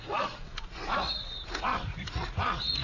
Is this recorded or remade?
remade